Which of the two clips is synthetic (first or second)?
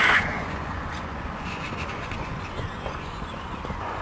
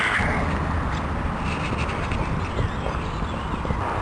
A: first